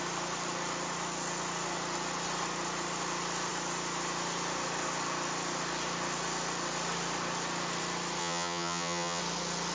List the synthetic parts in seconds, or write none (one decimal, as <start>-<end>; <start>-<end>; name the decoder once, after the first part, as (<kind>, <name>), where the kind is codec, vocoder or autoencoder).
8.2-9.2 (vocoder, HiFi-GAN)